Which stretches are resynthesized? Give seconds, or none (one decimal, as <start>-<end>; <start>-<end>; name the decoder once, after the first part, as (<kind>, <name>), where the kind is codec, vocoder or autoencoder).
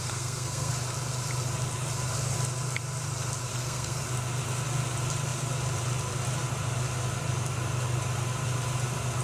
0.0-0.7 (codec, SNAC); 3.5-4.0